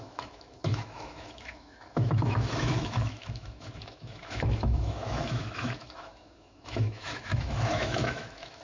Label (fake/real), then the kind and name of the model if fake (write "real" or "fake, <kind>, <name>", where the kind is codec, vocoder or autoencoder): fake, autoencoder, DAC-VAE